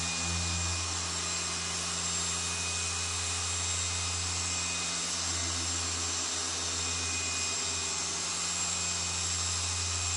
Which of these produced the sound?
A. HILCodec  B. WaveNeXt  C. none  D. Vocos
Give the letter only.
C